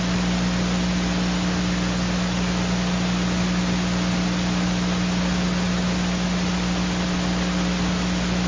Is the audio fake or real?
real